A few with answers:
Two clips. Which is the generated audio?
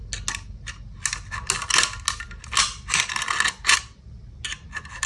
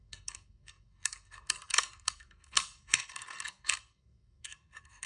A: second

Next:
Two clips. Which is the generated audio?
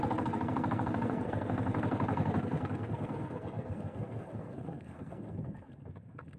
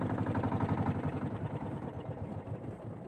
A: first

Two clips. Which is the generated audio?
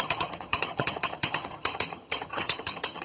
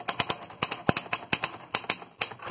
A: first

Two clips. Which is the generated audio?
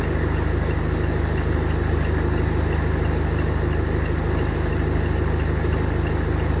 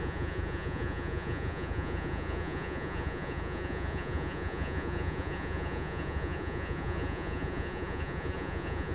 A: second